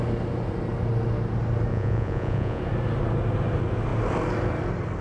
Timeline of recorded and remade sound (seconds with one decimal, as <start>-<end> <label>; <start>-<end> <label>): 0.0-1.7 recorded; 1.7-2.6 remade; 2.6-5.0 recorded